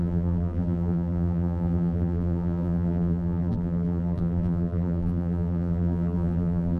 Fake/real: fake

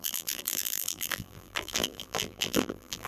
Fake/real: fake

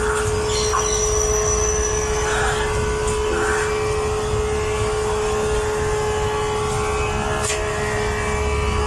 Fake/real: real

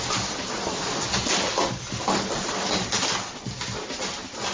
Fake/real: real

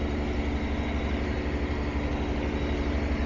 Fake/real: real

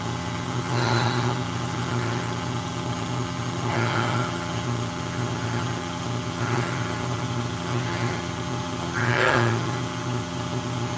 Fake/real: fake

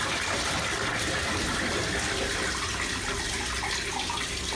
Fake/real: real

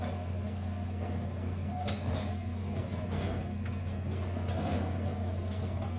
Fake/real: fake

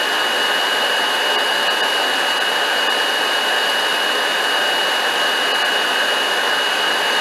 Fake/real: real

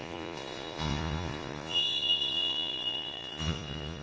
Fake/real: fake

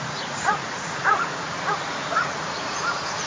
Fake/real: fake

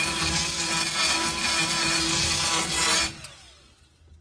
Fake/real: real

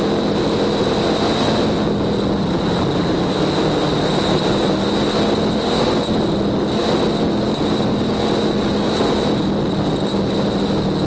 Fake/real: real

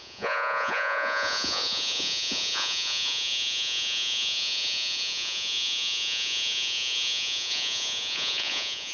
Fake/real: fake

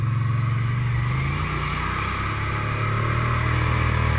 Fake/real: real